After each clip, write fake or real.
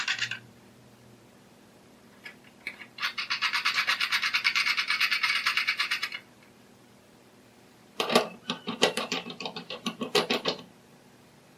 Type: fake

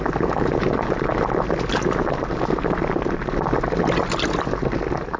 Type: real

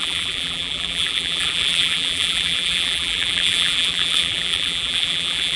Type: fake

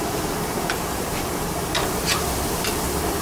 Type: fake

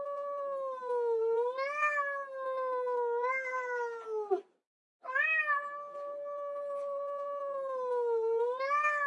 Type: real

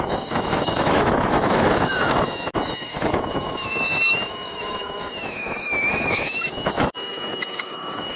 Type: fake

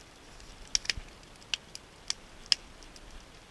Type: real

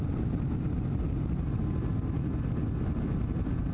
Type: real